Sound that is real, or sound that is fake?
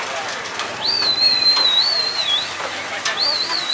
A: real